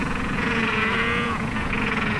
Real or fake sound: fake